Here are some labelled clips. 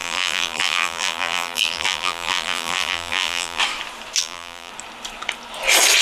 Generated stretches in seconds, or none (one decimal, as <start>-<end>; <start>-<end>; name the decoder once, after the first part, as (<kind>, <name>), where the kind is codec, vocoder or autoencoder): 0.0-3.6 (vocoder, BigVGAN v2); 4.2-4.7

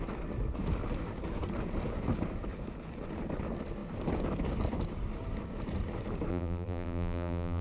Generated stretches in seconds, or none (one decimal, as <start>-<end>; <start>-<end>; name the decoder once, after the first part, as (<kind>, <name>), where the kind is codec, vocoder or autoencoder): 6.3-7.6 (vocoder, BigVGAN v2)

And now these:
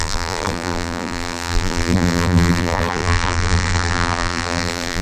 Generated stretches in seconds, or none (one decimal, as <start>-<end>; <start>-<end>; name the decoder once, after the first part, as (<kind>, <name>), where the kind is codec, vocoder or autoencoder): 0.0-5.0 (vocoder, BigVGAN v2)

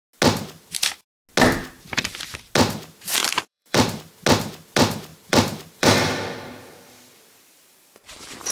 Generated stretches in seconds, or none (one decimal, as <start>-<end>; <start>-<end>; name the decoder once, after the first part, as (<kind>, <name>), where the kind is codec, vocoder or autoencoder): 3.2-4.0 (vocoder, BigVGAN v2); 5.1-8.5

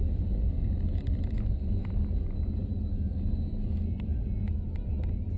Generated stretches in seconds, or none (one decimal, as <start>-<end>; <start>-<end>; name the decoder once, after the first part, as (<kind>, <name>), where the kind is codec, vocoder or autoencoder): none

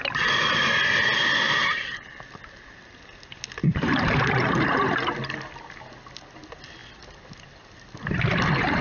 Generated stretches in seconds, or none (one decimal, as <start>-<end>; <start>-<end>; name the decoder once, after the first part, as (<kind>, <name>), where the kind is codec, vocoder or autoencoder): 1.6-2.4 (vocoder, BigVGAN v2)